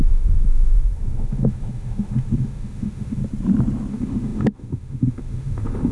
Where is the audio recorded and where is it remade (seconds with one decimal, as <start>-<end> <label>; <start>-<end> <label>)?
0.0-3.2 remade; 3.2-3.9 recorded; 3.9-5.9 remade

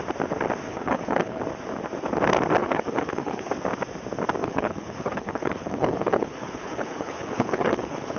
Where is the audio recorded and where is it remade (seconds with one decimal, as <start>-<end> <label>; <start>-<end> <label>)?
0.0-0.7 recorded; 0.7-1.4 remade; 1.4-2.6 recorded; 2.6-3.5 remade; 3.5-4.4 recorded; 4.4-8.2 remade

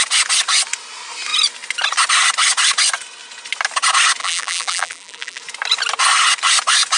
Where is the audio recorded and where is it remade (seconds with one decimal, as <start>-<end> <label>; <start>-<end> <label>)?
0.0-4.2 recorded; 4.2-5.4 remade; 5.4-7.0 recorded